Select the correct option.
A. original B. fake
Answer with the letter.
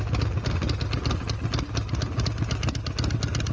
A